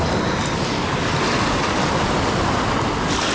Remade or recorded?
recorded